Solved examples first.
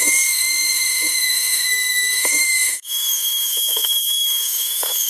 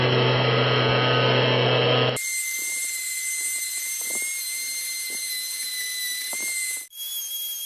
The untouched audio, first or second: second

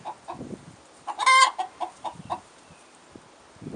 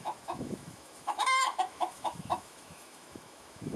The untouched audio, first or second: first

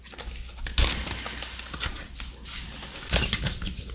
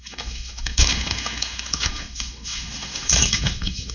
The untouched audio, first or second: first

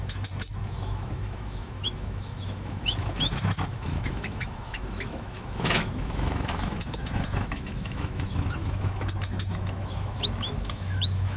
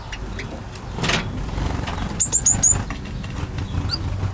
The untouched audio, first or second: second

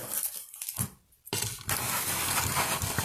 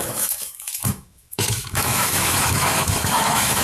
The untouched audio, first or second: first